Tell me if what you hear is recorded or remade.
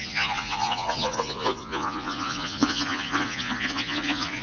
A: remade